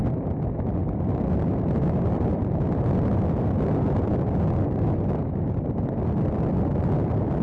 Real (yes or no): yes